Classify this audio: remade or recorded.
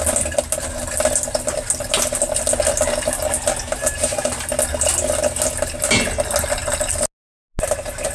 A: recorded